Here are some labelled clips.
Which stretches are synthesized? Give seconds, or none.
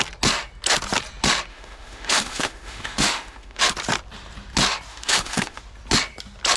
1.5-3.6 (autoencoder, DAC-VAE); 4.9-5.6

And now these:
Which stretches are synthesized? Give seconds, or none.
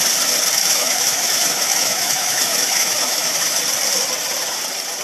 0.6-3.6 (autoencoder, DAC-VAE)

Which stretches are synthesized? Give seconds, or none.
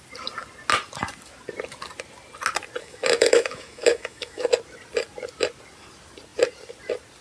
2.8-4.5 (autoencoder, DAC-VAE)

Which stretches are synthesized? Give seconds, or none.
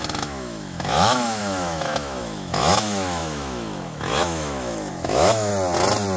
0.0-5.5 (autoencoder, DAC-VAE)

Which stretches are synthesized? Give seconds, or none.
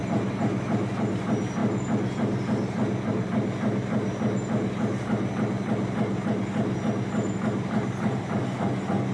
none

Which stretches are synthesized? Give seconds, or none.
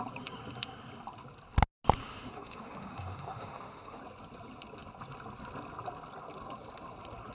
2.0-4.0 (autoencoder, DAC-VAE)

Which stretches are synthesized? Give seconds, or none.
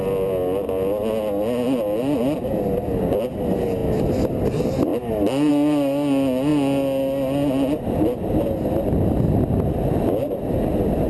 none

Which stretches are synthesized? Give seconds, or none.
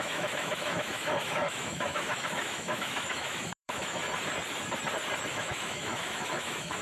0.0-4.0 (autoencoder, DAC-VAE); 5.3-6.8